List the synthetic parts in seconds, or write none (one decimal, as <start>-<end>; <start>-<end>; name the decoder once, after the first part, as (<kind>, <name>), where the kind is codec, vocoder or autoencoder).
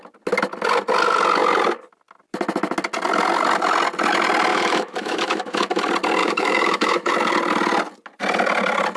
4.5-5.8 (autoencoder, DAC-VAE); 6.2-7.1